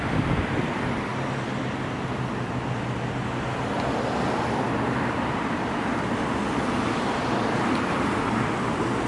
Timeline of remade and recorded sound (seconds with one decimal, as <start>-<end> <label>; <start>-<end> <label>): 0.0-1.1 remade; 1.1-4.6 recorded; 4.6-5.9 remade; 5.9-6.5 recorded; 6.5-9.1 remade